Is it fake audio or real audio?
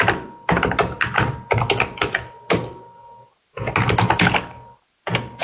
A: real